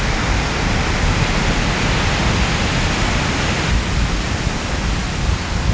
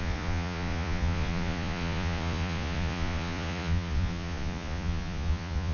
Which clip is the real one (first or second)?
first